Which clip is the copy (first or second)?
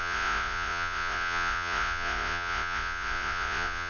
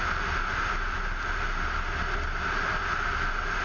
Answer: first